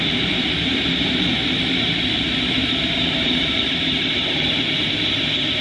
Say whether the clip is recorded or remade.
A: remade